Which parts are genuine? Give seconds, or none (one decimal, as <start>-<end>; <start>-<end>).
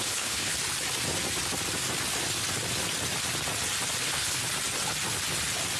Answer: 0.5-4.0; 4.4-5.8